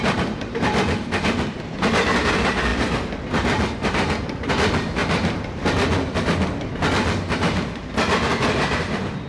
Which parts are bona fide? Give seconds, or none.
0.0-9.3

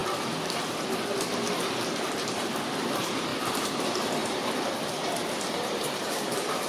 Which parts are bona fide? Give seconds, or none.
0.0-2.3

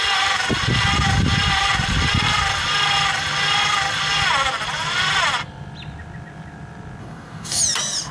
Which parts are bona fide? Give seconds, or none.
0.0-7.0; 7.6-8.1

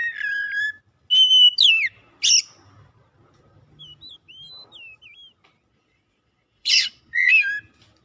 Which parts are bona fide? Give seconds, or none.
0.0-5.7; 7.3-8.0

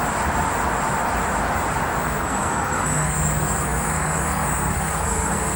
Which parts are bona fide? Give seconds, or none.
0.0-2.0

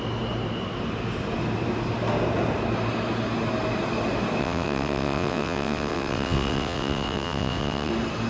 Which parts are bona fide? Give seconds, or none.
0.0-4.4; 7.9-8.3

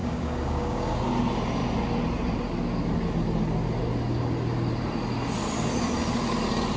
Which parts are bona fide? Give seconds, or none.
1.1-6.8